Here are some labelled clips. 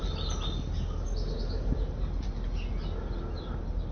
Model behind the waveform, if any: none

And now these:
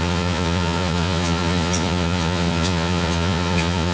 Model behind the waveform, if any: vocoder, Vocos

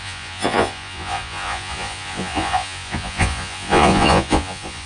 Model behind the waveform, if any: vocoder, Vocos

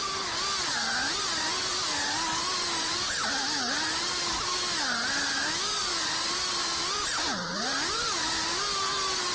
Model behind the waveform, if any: none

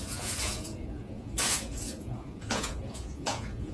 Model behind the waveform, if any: vocoder, Vocos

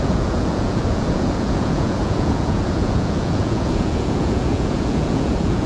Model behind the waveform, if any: vocoder, Vocos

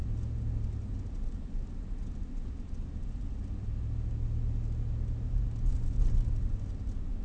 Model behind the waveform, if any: none